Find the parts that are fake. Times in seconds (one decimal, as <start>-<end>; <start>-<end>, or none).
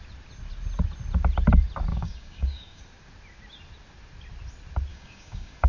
1.9-2.8; 4.9-5.7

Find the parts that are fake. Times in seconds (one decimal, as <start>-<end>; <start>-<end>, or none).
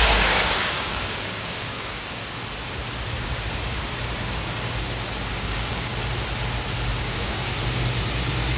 0.0-2.2; 5.3-5.9; 7.0-7.5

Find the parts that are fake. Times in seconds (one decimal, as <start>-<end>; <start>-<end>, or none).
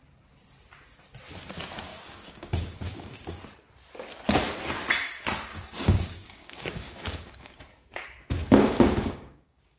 1.9-3.4; 5.5-7.6; 8.4-9.8